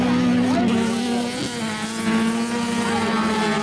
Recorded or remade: recorded